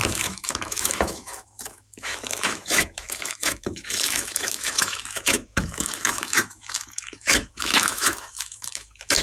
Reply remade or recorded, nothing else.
remade